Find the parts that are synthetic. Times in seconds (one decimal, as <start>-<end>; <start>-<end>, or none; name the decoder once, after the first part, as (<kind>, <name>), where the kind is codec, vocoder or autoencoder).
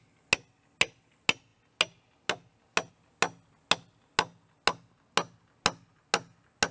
none